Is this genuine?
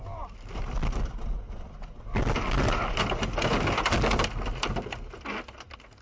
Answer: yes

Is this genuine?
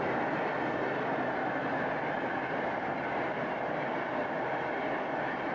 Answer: yes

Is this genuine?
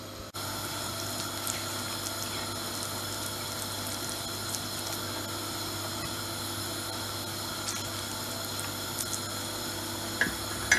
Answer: yes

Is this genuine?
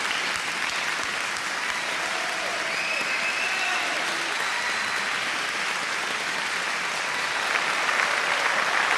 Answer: yes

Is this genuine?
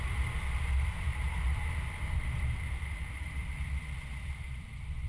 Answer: no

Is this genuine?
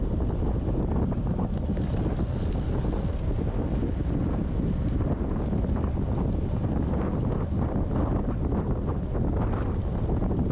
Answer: yes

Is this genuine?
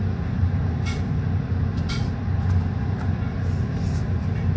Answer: yes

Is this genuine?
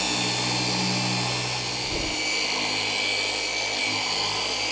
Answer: yes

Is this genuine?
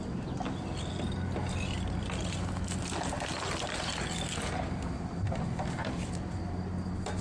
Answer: yes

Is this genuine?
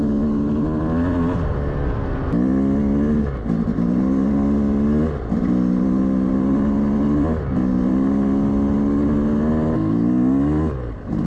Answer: yes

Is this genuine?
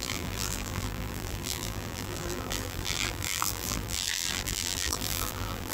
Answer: no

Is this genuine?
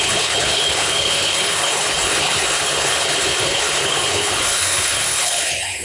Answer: no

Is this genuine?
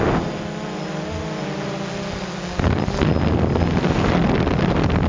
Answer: yes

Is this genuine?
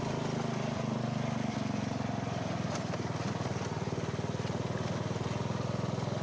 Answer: yes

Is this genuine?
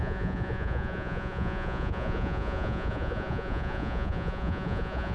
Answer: no